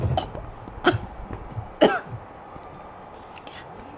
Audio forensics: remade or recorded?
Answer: recorded